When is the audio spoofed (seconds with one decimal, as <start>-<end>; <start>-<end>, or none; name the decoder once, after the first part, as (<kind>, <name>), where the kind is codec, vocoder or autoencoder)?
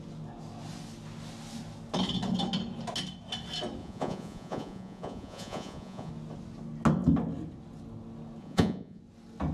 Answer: 3.8-6.1 (vocoder, Vocos); 8.4-9.0